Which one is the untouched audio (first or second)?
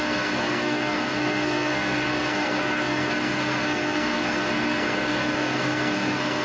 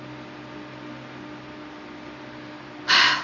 second